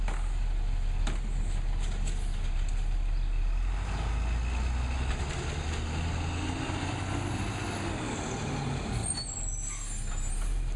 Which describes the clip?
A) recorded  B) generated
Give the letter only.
A